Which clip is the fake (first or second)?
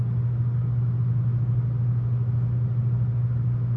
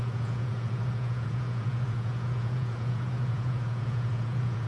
second